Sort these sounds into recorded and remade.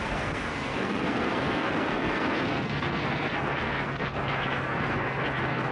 remade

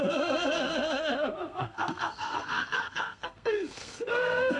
remade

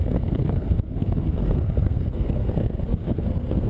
remade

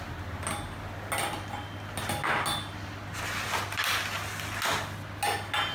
recorded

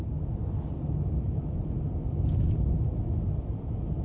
recorded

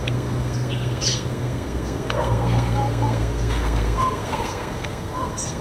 remade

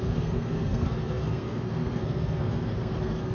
remade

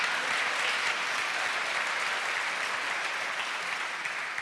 recorded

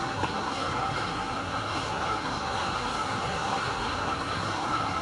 remade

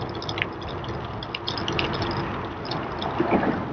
recorded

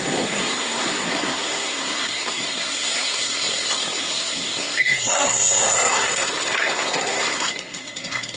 remade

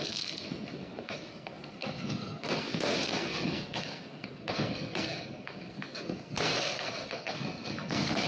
remade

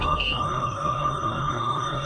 remade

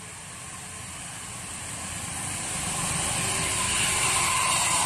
recorded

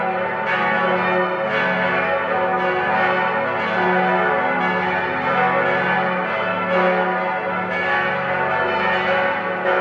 recorded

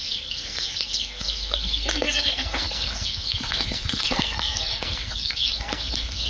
remade